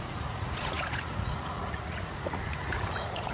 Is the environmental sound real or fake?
fake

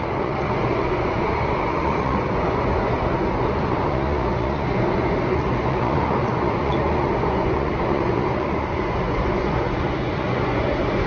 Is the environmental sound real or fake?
fake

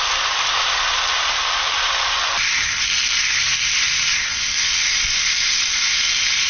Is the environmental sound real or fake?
real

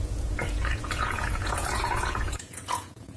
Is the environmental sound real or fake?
fake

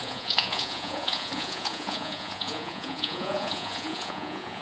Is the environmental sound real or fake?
fake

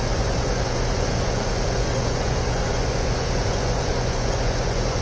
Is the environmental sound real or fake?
fake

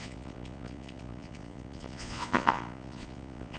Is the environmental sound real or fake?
fake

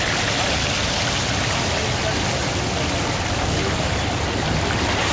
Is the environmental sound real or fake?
real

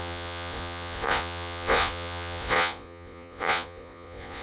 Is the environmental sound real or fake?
fake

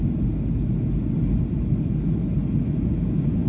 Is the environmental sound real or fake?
real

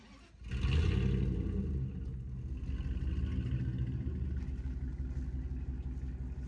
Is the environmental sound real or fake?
real